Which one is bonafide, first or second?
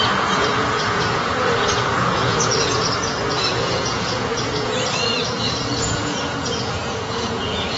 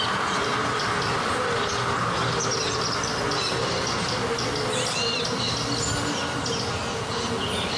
second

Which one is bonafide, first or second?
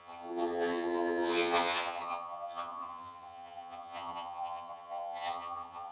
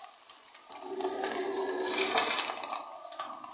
second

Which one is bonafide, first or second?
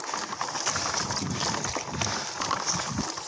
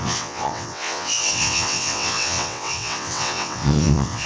first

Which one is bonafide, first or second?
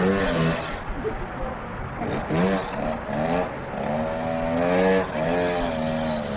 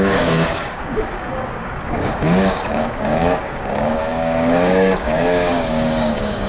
first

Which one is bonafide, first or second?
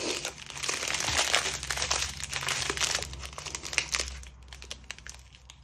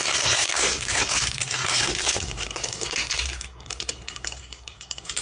first